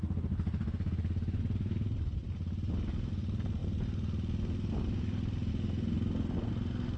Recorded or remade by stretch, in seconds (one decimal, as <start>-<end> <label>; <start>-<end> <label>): 0.0-7.0 recorded